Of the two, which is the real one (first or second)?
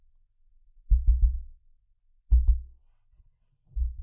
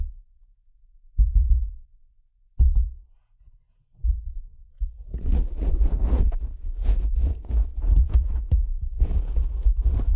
first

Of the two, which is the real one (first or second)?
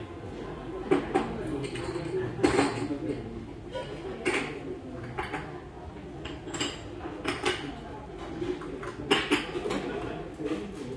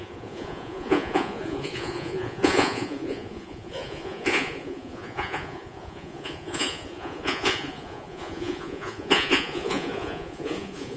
first